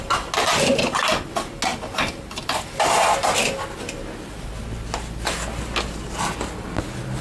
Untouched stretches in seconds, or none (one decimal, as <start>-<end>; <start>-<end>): 0.0-7.2